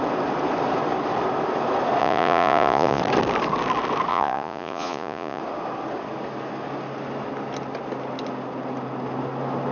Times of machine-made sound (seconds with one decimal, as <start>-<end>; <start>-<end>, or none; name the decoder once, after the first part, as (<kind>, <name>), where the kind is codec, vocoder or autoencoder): 2.0-3.0 (vocoder, Vocos); 4.1-5.4